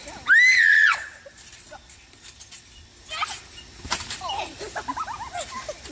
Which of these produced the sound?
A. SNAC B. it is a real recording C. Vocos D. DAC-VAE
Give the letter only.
B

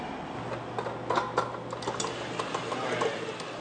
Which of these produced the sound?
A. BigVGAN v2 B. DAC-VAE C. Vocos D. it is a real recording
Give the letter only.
D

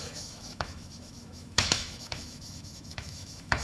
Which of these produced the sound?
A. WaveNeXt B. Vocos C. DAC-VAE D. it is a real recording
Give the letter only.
C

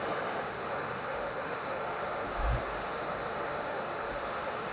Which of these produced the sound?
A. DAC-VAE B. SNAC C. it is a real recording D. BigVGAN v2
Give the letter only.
A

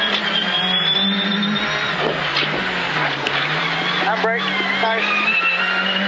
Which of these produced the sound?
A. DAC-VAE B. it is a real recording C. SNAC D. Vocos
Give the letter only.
B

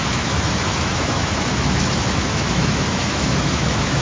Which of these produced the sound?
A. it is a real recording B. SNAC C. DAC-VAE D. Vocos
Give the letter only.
C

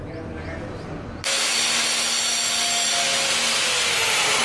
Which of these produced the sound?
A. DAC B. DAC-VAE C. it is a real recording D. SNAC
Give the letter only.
C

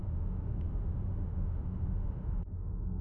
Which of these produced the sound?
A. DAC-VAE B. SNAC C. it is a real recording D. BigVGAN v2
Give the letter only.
A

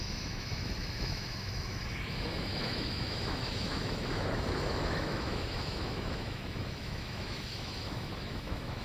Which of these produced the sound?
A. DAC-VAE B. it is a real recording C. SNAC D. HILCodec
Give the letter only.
A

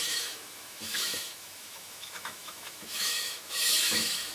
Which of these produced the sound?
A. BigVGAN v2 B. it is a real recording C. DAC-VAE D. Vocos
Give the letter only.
C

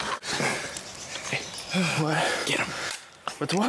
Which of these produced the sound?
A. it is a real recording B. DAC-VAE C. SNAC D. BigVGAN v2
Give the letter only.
A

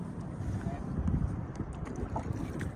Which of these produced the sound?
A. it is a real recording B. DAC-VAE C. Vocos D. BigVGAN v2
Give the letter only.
A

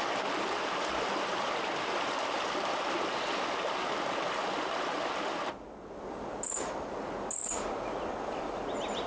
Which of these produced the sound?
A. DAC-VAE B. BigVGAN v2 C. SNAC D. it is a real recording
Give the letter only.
D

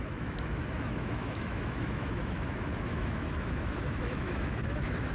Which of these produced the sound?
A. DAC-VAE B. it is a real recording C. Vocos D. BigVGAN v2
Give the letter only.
A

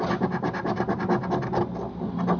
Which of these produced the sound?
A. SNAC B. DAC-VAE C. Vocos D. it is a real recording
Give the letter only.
D